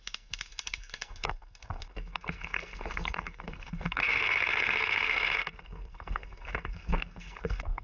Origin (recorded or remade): remade